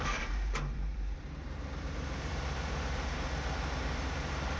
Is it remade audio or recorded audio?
remade